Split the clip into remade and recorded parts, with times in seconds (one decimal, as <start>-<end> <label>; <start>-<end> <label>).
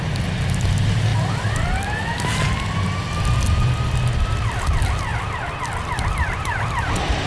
0.0-7.3 recorded